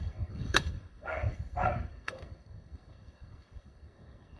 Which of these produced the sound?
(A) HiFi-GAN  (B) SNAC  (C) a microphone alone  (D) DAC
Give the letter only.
B